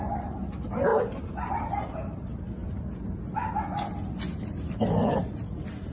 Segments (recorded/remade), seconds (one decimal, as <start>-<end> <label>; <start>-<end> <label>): 0.0-5.9 recorded

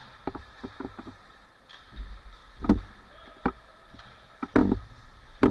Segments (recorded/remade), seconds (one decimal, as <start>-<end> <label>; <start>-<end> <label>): 0.0-1.9 remade; 1.9-4.6 recorded; 4.6-5.5 remade

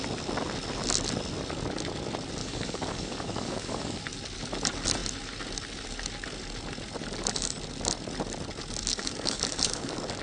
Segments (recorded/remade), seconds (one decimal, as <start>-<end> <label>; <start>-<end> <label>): 0.0-2.4 recorded; 2.4-4.0 remade; 4.0-8.9 recorded; 8.9-10.2 remade

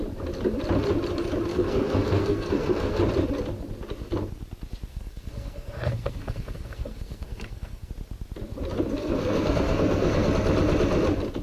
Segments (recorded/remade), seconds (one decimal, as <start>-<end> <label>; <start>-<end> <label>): 0.0-1.5 recorded; 1.5-3.0 remade; 3.0-4.9 recorded; 4.9-7.9 remade; 7.9-9.0 recorded; 9.0-10.3 remade; 10.3-11.4 recorded

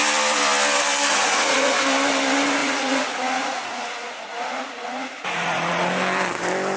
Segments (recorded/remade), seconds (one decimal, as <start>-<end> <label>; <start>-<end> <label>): 0.0-1.1 recorded; 1.1-1.8 remade; 1.8-2.6 recorded; 2.6-5.9 remade; 5.9-6.8 recorded

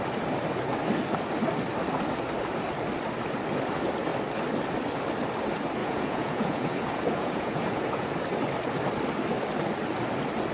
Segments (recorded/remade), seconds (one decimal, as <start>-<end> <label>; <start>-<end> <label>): 0.0-5.8 recorded; 5.8-8.1 remade; 8.1-10.5 recorded

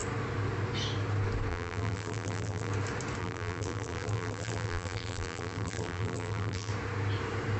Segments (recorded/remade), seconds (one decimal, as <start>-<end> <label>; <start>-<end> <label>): 0.0-1.5 recorded; 1.5-2.7 remade; 2.7-3.2 recorded; 3.2-6.7 remade; 6.7-7.6 recorded